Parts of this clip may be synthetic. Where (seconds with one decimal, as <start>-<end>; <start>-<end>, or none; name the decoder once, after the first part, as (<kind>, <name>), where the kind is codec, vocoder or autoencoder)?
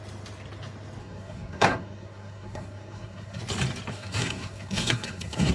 1.0-3.4 (codec, SNAC); 3.9-5.5